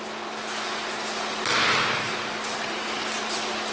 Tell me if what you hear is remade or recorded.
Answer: recorded